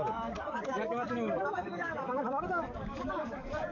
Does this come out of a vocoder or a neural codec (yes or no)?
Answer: yes